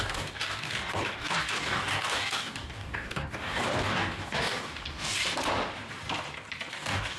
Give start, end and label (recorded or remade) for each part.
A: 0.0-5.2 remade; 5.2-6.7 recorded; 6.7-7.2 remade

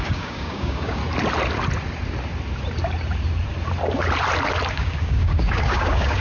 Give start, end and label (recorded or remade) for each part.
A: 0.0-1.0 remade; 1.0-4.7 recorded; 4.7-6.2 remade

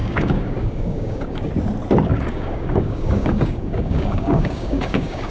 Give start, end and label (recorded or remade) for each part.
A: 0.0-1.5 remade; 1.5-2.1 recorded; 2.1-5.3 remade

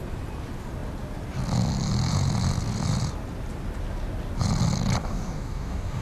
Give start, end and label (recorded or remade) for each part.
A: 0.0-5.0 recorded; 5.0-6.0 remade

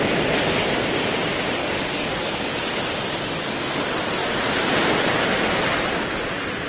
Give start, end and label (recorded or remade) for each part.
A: 0.0-1.6 recorded; 1.6-2.8 remade; 2.8-6.7 recorded